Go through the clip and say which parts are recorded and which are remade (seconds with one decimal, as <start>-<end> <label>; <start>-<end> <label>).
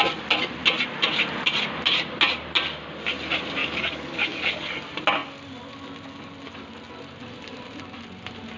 0.0-3.6 recorded; 3.6-4.7 remade; 4.7-8.6 recorded